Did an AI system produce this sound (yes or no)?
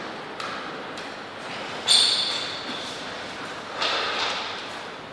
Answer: no